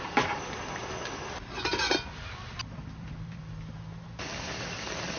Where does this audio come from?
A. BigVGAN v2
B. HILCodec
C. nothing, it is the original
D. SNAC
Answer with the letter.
A